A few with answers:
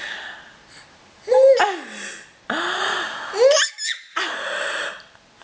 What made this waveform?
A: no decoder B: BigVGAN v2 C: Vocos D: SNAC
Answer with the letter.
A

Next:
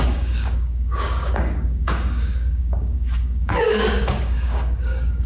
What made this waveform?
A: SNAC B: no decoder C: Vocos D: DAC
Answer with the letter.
D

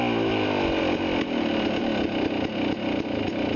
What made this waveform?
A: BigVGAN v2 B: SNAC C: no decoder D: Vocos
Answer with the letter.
C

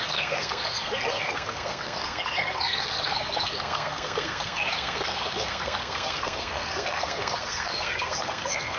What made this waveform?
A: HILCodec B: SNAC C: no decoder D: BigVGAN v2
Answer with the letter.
B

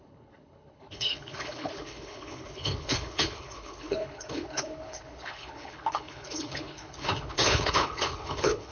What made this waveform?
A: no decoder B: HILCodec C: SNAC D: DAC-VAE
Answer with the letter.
B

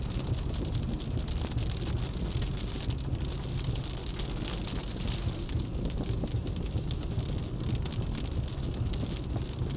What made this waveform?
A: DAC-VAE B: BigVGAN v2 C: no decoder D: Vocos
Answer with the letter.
C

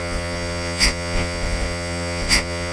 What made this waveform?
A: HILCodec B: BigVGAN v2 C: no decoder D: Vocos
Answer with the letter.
D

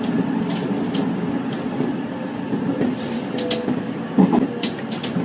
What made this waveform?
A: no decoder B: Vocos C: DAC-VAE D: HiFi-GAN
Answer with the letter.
A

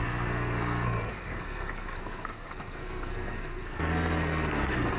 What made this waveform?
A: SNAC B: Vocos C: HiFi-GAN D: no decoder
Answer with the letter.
A